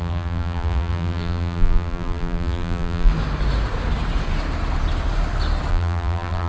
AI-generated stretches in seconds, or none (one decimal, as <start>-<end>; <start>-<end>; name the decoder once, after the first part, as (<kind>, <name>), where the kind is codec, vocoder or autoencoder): 0.0-3.1 (vocoder, BigVGAN v2); 5.7-6.5